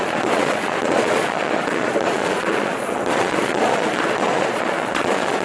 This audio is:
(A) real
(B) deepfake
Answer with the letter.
B